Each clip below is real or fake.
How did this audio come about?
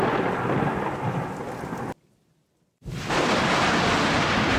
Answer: real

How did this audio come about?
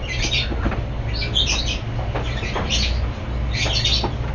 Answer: real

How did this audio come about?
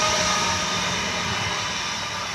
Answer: real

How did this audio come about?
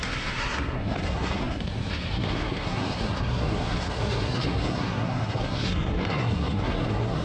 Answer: fake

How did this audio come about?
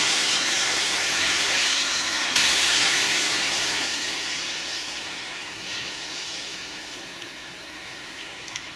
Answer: fake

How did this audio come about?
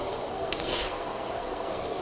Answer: fake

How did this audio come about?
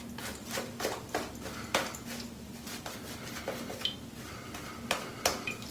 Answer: real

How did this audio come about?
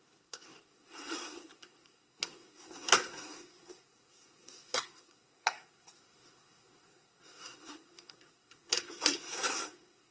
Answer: fake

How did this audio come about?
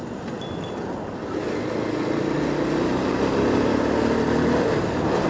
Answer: real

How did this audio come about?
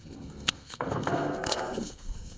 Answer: fake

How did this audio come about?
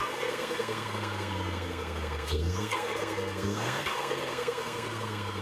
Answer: fake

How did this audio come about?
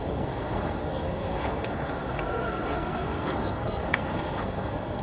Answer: fake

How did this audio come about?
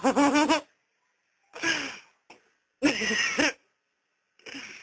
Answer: real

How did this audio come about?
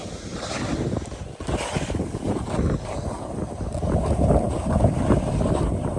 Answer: real